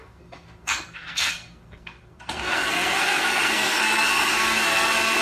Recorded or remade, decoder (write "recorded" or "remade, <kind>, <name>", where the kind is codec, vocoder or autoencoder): remade, codec, SNAC